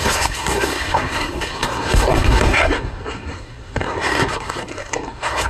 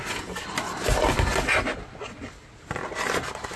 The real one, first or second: second